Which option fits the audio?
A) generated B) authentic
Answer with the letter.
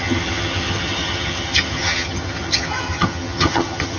A